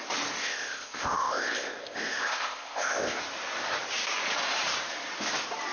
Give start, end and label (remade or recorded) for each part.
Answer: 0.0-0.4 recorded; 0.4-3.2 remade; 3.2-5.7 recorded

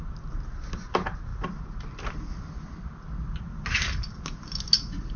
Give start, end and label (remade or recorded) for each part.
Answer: 0.0-5.2 recorded

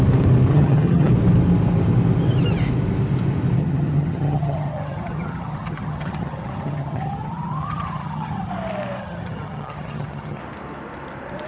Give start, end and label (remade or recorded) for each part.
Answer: 0.0-0.5 recorded; 0.5-1.1 remade; 1.1-3.6 recorded; 3.6-8.5 remade; 8.5-9.0 recorded; 9.0-10.4 remade; 10.4-11.5 recorded

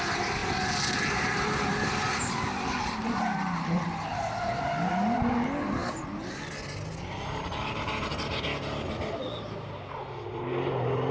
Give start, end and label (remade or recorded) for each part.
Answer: 0.0-11.1 recorded

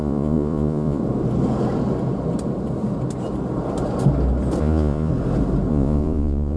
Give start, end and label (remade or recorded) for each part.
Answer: 0.0-1.0 remade; 1.0-4.6 recorded; 4.6-5.1 remade; 5.1-5.7 recorded; 5.7-6.6 remade